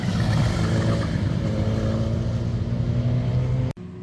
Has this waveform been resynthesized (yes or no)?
no